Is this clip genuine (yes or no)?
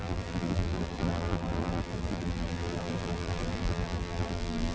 no